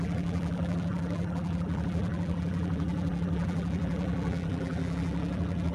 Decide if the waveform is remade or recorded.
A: remade